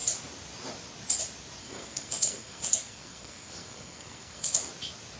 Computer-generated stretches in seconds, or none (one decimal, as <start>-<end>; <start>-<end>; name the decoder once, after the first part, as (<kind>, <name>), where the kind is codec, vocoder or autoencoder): 1.6-4.7 (codec, SNAC)